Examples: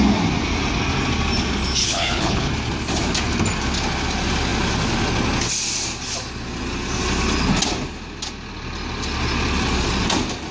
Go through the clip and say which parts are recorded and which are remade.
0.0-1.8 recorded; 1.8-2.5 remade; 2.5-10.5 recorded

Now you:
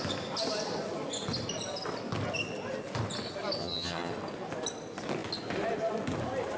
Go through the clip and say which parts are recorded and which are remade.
0.0-3.6 recorded; 3.6-4.1 remade; 4.1-6.6 recorded